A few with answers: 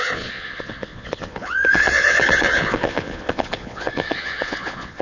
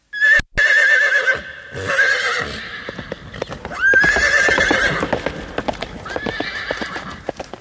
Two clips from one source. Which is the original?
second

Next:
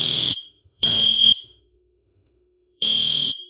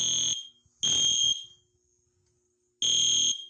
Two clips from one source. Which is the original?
second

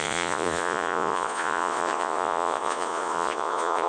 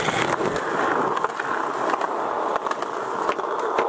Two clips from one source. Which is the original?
second